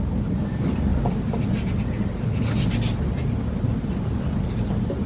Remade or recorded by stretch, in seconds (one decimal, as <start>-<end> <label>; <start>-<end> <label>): 0.0-5.1 recorded